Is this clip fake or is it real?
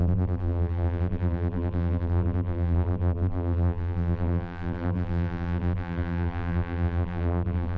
fake